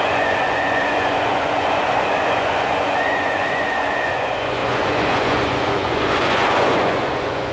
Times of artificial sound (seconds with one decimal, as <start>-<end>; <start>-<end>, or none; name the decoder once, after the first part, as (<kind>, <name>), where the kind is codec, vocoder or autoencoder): 0.0-7.5 (vocoder, Vocos)